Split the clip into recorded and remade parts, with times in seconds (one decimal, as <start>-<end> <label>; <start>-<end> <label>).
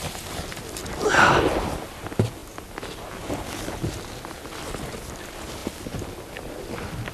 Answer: 0.0-0.8 recorded; 0.8-1.8 remade; 1.8-7.1 recorded